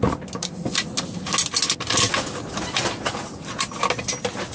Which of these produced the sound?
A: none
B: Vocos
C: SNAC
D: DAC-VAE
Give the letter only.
A